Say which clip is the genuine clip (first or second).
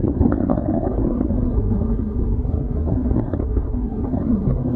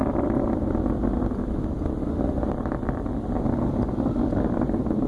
second